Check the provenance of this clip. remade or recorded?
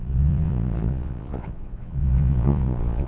remade